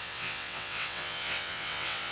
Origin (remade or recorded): remade